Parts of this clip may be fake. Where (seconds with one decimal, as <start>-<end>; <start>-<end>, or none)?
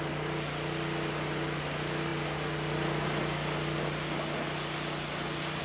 none